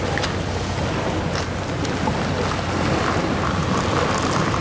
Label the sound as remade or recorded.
recorded